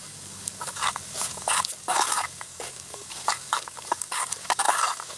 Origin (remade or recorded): remade